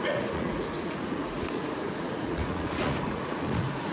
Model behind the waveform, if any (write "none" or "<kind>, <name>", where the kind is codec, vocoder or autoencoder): vocoder, Vocos